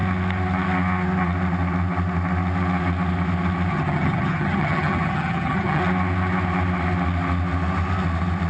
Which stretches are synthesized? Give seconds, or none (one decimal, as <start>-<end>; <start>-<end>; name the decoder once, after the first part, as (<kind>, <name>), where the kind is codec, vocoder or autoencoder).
3.7-5.8 (vocoder, HiFi-GAN)